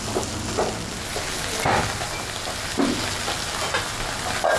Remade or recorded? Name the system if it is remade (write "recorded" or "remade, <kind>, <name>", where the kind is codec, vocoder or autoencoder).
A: recorded